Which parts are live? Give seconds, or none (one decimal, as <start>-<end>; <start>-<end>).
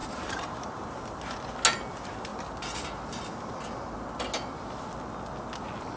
1.2-6.0